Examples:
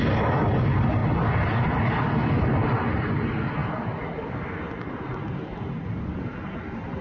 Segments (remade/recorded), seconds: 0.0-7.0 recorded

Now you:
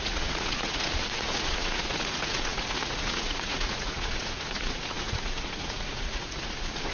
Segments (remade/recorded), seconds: 0.0-6.9 remade

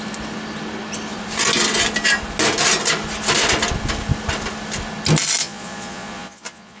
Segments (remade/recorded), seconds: 0.0-5.4 recorded; 5.4-6.8 remade

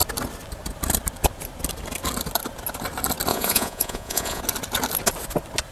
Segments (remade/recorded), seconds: 0.0-3.3 recorded; 3.3-4.4 remade; 4.4-5.7 recorded

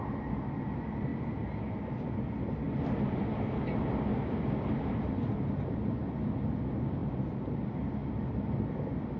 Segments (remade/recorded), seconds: 0.0-9.2 recorded

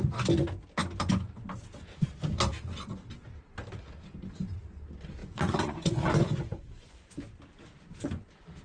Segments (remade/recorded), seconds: 0.0-5.2 recorded; 5.2-7.1 remade; 7.1-8.6 recorded

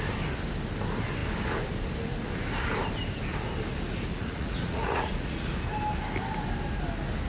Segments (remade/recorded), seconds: 0.0-4.1 recorded; 4.1-5.6 remade; 5.6-7.3 recorded